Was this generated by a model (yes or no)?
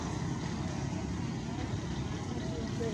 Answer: no